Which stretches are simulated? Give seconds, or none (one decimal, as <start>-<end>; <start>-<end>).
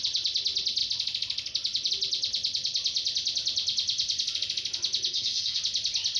5.1-5.6